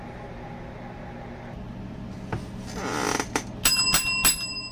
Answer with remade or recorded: recorded